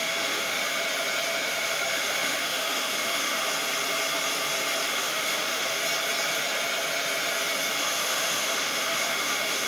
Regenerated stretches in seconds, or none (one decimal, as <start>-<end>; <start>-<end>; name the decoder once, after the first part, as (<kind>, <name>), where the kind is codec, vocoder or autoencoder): 0.0-0.6 (autoencoder, DAC-VAE); 1.6-3.4; 4.9-5.8; 7.8-9.7